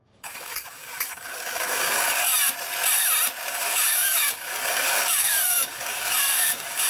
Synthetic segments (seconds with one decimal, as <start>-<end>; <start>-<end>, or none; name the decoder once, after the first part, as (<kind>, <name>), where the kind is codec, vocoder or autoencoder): 0.0-2.3 (codec, DAC); 3.5-6.9